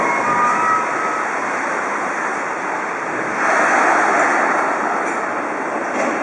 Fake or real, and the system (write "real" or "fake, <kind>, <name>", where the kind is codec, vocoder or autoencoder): real